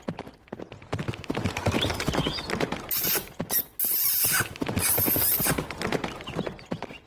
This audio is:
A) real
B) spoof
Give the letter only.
A